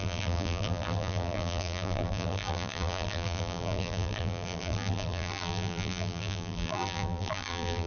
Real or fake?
fake